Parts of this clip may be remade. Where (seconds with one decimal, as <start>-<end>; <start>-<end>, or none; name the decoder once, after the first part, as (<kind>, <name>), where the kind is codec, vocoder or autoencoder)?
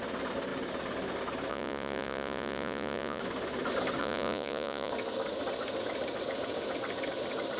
1.5-3.2 (vocoder, Vocos); 4.0-4.9